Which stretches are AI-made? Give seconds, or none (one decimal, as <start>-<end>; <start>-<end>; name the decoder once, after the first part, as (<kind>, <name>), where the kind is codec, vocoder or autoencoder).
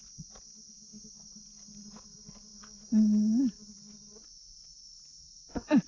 none